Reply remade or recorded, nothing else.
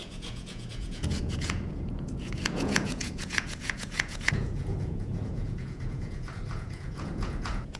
remade